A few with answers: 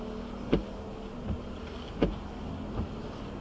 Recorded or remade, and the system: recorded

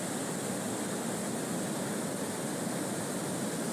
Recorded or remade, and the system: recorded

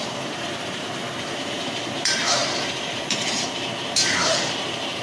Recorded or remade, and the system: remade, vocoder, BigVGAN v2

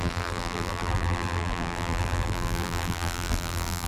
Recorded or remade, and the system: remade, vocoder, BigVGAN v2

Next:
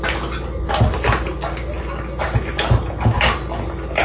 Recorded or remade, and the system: recorded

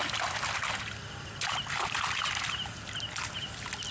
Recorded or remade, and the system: recorded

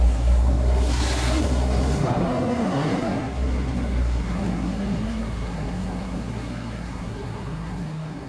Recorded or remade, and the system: remade, codec, SNAC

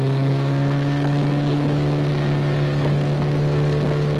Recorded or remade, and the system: remade, codec, DAC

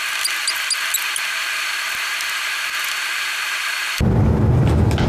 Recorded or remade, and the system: recorded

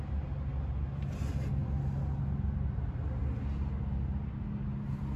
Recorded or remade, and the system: recorded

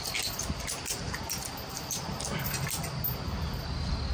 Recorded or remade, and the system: recorded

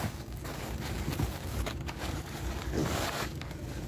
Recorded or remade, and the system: remade, codec, DAC